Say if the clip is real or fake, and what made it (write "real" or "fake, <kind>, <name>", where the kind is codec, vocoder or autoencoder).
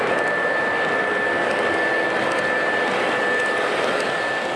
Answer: real